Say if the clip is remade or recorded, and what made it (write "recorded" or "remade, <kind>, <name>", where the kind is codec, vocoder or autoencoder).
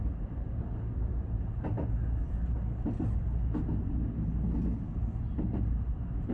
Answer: recorded